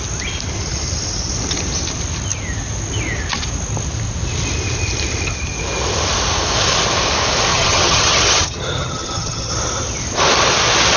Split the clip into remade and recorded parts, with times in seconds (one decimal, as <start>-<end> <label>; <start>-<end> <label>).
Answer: 0.0-7.5 recorded; 7.5-9.5 remade; 9.5-11.0 recorded